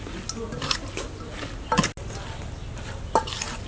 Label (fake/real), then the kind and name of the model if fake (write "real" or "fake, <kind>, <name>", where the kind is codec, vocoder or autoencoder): real